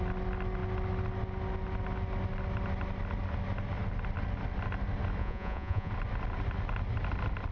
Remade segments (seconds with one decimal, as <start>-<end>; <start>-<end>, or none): 5.2-5.9